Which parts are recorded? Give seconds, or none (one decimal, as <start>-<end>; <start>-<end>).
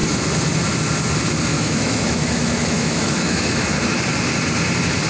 0.0-1.5; 3.7-5.1